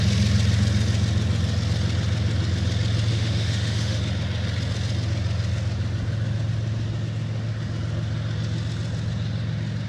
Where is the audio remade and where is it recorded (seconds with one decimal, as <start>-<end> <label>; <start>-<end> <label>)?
0.0-3.1 recorded; 3.1-4.0 remade; 4.0-9.9 recorded